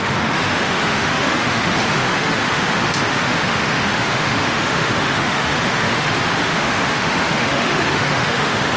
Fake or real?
fake